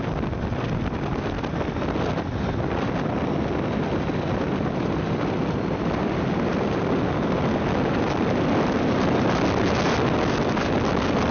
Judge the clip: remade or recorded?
recorded